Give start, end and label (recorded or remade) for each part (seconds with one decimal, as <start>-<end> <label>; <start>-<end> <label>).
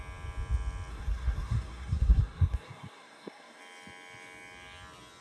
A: 0.0-0.9 recorded; 0.9-3.6 remade; 3.6-5.2 recorded